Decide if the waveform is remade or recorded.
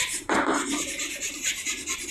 remade